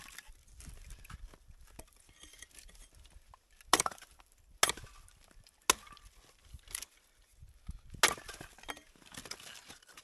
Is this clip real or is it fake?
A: real